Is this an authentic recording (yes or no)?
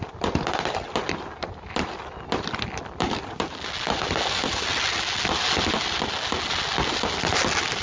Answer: yes